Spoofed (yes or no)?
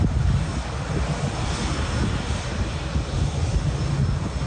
no